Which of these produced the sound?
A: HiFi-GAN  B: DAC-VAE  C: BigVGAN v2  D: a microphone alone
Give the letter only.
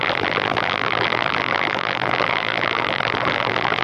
C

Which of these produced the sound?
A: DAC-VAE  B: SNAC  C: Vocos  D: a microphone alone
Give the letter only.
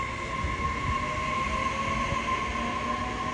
D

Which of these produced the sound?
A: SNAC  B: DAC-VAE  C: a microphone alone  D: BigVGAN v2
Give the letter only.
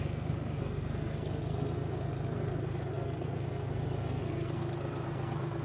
A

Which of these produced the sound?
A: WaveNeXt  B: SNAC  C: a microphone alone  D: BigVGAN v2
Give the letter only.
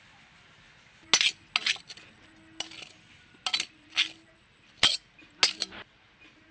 C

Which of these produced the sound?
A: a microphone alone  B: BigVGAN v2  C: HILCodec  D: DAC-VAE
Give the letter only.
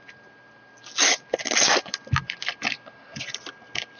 A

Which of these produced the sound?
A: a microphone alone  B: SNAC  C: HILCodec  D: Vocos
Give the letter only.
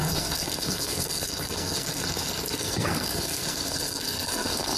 B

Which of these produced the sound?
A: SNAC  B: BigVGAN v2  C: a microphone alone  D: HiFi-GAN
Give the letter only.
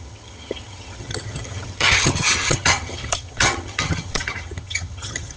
D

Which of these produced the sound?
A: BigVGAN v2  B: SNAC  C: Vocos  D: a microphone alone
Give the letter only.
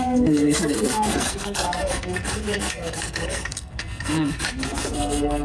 B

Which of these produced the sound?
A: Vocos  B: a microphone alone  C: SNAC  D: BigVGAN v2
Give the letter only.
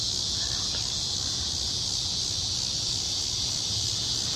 B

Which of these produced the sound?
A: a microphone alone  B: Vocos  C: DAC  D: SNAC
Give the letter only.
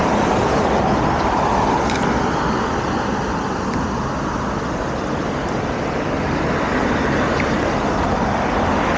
A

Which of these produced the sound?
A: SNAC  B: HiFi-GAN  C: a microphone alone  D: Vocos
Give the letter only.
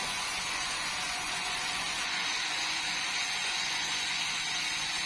D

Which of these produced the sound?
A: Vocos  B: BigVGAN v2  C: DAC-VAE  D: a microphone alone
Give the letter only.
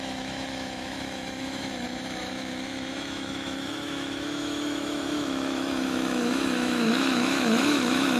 C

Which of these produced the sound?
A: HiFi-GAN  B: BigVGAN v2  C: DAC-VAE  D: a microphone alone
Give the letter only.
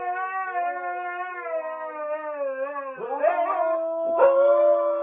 D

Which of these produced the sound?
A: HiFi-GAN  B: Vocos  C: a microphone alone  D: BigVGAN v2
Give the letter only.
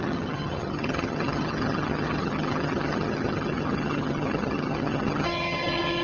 A